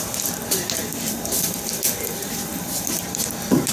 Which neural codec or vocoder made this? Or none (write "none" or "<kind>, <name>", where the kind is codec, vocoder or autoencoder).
vocoder, BigVGAN v2